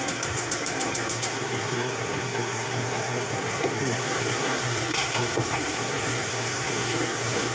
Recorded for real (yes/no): no